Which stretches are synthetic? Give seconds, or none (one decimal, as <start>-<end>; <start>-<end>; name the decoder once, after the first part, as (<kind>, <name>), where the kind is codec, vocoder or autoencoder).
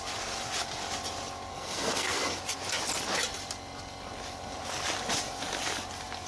1.5-2.4 (codec, SNAC)